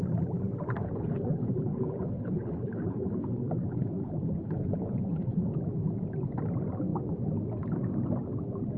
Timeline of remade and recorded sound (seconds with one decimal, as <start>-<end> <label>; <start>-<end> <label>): 0.0-0.8 recorded; 0.8-5.5 remade; 5.5-8.8 recorded